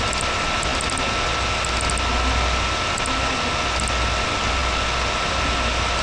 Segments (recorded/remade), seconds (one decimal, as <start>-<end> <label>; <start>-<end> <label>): 0.0-6.0 recorded